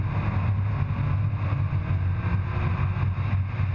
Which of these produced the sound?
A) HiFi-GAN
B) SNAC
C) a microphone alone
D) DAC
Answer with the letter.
C